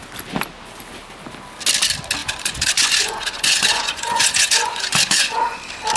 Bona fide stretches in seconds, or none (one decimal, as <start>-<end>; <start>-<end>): 0.0-2.2; 5.6-6.0

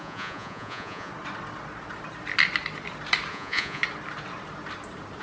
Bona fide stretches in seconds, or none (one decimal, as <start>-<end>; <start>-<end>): 1.1-3.3; 3.8-5.2

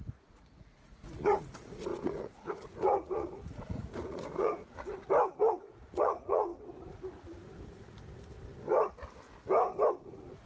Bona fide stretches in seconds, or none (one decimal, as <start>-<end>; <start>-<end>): 4.6-5.4; 6.5-9.9